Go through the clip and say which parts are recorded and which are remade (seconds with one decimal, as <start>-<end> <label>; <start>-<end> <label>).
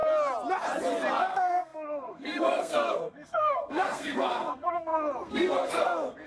0.0-1.2 recorded; 1.2-6.3 remade